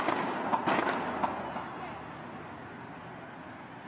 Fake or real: real